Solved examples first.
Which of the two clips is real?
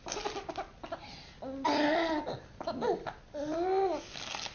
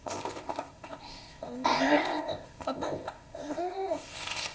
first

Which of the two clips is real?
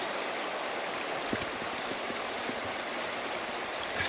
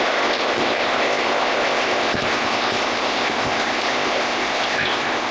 first